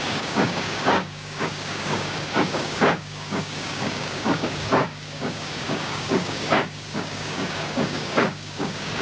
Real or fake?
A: fake